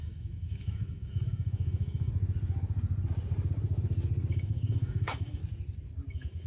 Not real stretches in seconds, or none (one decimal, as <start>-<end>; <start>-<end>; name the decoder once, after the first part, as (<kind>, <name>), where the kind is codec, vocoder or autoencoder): 0.0-2.1 (autoencoder, DAC-VAE); 4.3-5.4; 6.1-6.5